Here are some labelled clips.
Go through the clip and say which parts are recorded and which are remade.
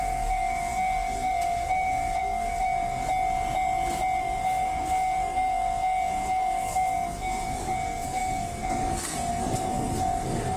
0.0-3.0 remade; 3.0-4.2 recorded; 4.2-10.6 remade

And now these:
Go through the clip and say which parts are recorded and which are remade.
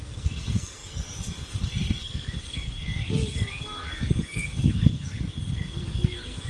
0.0-6.5 remade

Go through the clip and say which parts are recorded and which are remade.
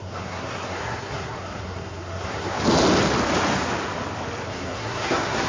0.0-2.6 remade; 2.6-4.5 recorded; 4.5-5.5 remade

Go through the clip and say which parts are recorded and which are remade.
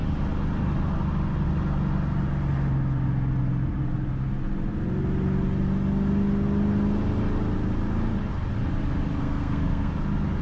0.0-9.2 recorded; 9.2-9.9 remade; 9.9-10.4 recorded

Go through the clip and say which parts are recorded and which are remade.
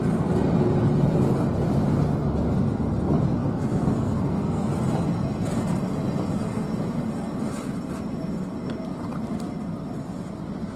0.0-3.4 recorded; 3.4-4.7 remade; 4.7-10.8 recorded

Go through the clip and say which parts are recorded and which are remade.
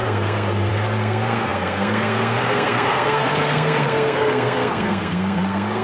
0.0-5.8 remade